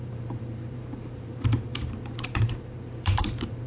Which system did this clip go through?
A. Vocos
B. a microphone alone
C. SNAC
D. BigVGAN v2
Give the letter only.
D